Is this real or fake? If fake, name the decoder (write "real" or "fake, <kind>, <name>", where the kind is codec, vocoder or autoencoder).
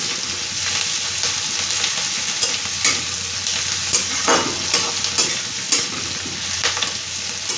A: real